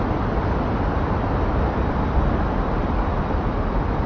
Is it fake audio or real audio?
real